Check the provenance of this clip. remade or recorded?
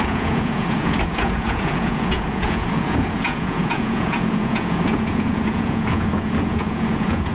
remade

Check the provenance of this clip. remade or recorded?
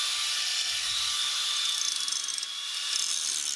recorded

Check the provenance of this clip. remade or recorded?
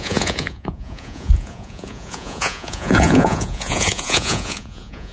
remade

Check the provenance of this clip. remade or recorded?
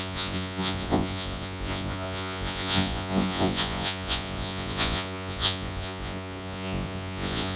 remade